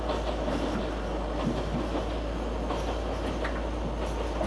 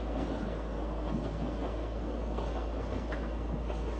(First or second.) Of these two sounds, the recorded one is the first